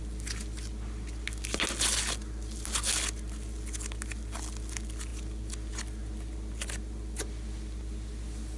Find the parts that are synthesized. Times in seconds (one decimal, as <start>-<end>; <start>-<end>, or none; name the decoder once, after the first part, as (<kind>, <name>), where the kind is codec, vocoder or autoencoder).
none